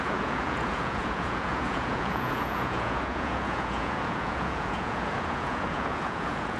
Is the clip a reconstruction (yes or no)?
yes